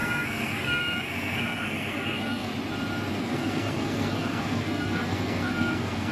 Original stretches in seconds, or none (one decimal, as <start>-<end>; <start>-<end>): 2.5-3.1